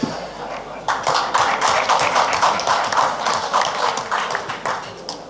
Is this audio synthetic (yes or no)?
no